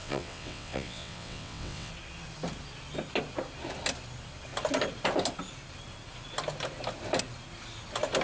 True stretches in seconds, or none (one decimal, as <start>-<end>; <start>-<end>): 1.9-8.2